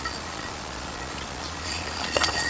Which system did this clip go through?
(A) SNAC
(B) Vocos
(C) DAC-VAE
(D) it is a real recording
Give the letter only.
B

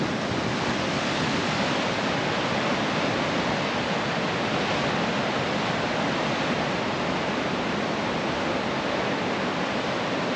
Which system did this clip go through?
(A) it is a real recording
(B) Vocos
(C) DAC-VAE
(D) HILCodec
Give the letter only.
A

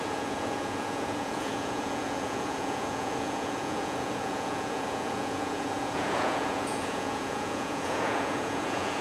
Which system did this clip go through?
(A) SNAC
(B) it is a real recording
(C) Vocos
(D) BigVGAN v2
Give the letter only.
C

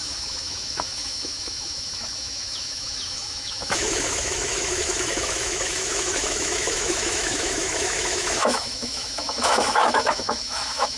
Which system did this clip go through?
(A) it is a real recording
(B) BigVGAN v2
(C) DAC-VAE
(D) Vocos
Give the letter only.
C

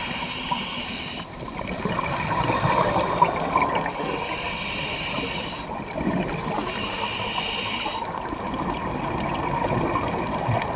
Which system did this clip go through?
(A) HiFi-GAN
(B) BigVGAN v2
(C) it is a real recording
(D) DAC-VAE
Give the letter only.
C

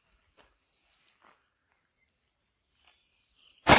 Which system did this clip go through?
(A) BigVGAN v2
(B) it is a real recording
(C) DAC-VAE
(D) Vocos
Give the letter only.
A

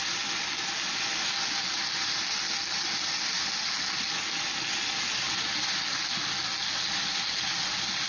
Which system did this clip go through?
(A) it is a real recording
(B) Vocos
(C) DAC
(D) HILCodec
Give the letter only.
A